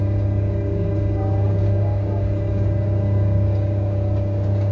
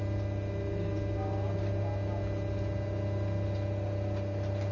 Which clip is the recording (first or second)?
second